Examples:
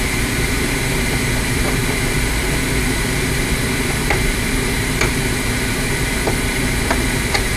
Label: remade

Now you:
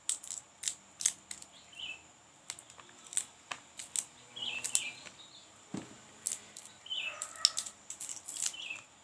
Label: recorded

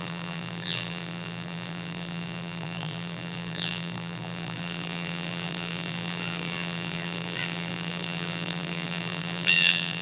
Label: remade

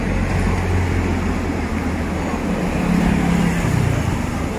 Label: recorded